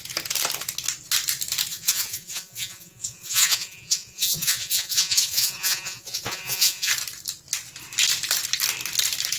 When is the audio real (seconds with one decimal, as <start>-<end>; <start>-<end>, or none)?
0.0-1.7; 6.9-9.4